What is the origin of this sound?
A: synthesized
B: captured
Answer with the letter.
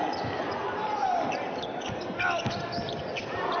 B